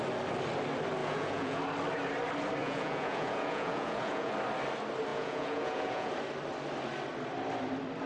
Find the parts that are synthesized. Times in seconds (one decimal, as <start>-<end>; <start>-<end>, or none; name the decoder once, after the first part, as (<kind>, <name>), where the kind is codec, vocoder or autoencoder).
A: 1.0-1.6 (vocoder, Vocos); 2.6-4.3; 5.1-6.1